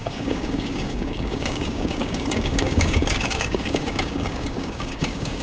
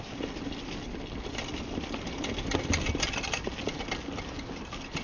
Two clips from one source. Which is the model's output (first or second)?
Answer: first